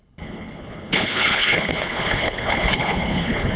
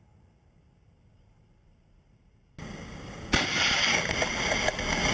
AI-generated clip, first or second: first